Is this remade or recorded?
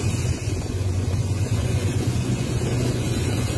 remade